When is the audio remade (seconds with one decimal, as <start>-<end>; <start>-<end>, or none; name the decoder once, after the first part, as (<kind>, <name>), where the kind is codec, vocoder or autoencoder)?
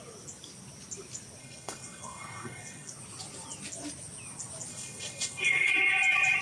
1.4-2.9 (codec, SNAC); 4.7-5.7